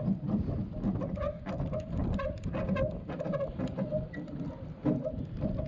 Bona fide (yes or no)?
yes